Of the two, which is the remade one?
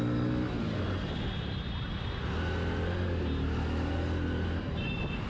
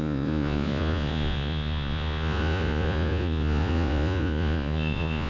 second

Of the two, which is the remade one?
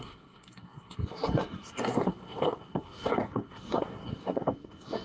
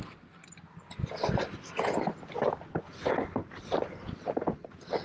first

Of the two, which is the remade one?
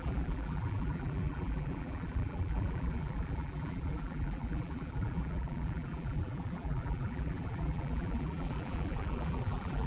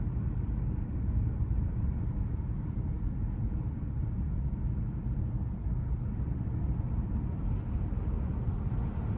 first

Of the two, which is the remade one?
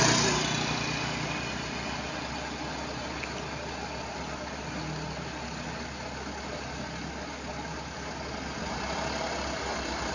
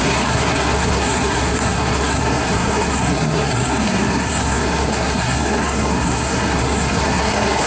second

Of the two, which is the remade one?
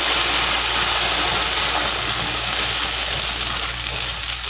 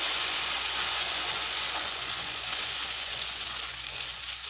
second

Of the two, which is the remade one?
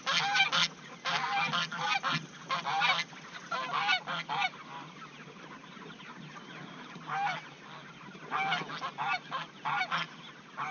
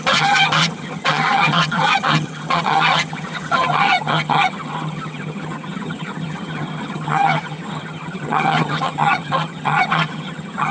second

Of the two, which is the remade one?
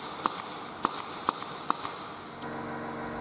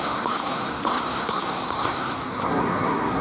second